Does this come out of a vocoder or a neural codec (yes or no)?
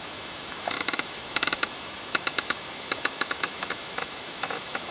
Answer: yes